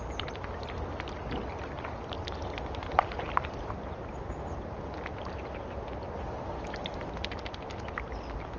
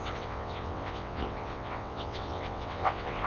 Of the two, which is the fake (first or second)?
second